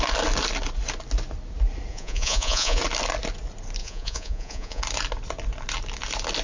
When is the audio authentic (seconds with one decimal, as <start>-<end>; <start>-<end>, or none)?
0.0-1.9; 2.8-3.8; 4.8-6.4